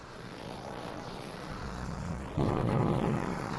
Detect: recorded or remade remade